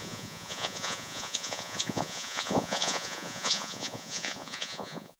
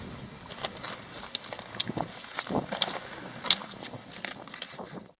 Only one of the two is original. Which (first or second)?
second